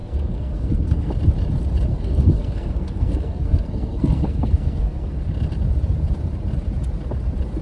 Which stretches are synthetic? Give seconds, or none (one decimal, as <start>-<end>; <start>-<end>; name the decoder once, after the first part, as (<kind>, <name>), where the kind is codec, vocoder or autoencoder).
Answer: 0.0-1.1 (codec, SNAC); 1.9-5.2